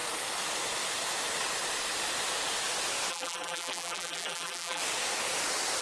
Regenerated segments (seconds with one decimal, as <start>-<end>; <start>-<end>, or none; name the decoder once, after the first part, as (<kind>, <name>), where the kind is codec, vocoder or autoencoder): 3.1-4.8 (vocoder, BigVGAN v2)